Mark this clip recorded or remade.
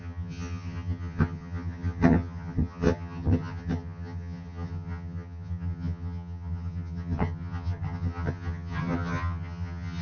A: remade